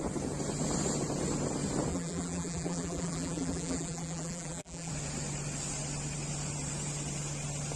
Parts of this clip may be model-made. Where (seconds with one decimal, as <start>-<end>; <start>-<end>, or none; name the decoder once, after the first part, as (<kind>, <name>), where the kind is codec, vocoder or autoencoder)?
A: 1.9-4.9 (vocoder, BigVGAN v2)